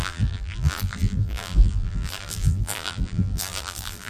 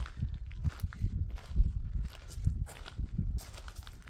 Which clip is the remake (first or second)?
first